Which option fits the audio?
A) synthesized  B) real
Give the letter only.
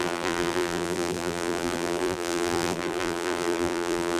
A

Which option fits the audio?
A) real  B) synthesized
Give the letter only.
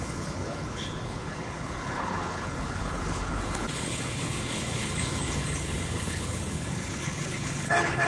B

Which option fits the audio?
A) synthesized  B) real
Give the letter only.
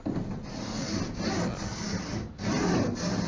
B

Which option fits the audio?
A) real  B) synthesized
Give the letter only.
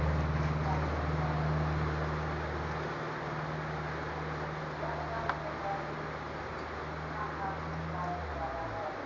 A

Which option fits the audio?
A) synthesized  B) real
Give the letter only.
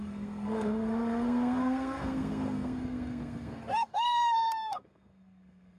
A